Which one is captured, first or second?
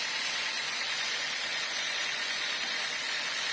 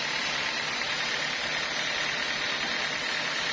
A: second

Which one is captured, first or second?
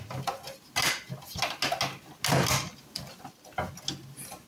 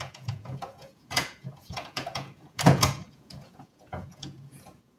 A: first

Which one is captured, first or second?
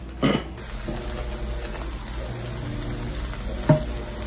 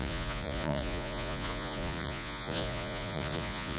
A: first